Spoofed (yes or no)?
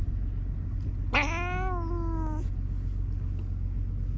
no